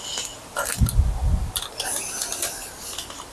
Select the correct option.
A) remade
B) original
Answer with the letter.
B